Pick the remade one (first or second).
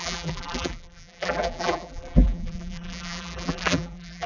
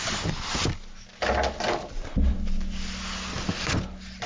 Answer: first